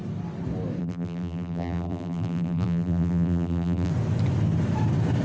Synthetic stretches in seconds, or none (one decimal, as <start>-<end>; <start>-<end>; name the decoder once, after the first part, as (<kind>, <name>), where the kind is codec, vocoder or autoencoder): 0.8-3.9 (vocoder, BigVGAN v2)